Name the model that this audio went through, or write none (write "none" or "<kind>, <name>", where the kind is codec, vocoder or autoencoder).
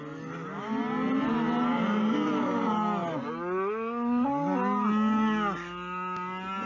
none